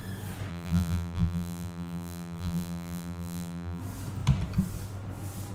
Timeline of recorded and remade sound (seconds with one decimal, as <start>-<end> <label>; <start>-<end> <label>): 0.0-0.5 recorded; 0.5-3.8 remade; 3.8-5.5 recorded